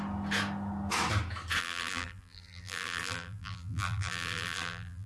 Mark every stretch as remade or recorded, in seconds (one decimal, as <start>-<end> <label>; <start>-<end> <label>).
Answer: 0.0-1.6 recorded; 1.6-5.1 remade